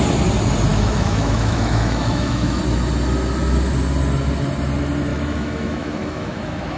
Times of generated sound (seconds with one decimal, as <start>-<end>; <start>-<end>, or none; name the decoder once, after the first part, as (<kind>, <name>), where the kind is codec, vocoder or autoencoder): 0.7-2.6 (autoencoder, DAC-VAE); 5.1-6.8